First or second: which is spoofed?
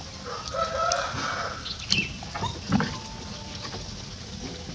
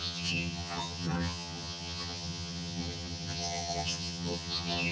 second